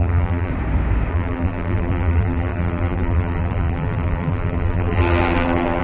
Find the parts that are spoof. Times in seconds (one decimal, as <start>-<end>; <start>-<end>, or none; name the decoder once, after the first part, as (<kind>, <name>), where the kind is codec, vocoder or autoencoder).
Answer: 0.0-0.5 (vocoder, BigVGAN v2); 1.1-5.8